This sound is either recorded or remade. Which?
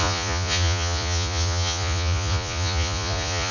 remade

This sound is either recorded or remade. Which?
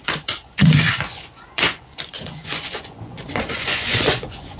remade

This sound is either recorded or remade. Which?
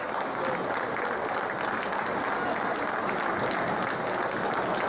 recorded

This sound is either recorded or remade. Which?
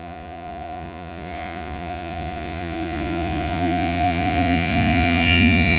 remade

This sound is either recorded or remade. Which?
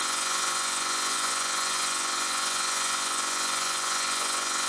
remade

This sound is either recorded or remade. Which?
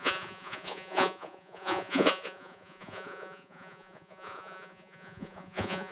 remade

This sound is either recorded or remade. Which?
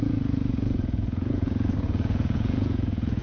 remade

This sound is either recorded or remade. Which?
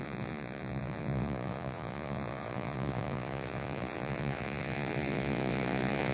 remade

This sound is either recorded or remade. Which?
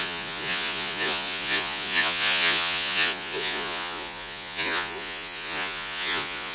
remade